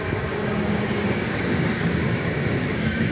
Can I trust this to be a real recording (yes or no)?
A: no